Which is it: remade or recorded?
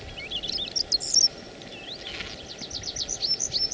recorded